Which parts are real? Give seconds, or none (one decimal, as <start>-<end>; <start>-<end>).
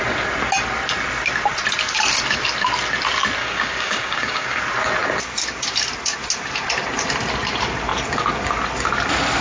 0.0-3.4; 4.6-9.4